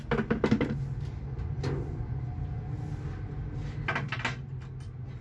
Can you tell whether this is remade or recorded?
recorded